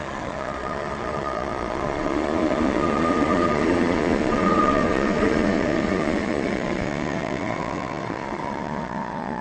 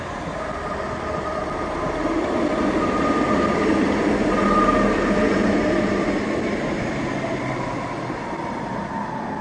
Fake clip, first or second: first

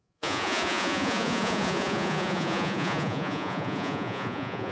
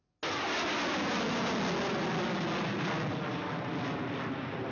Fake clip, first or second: first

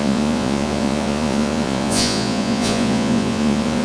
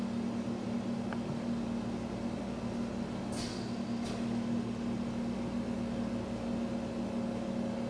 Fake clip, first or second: first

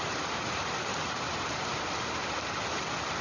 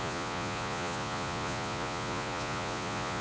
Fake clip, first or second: second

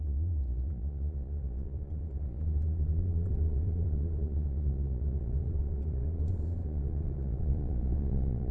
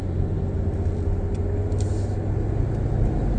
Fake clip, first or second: first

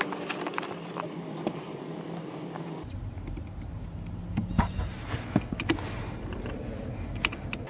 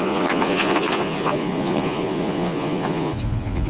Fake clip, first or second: second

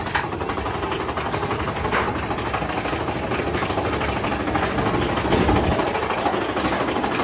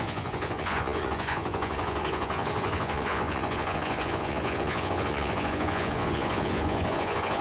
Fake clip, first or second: second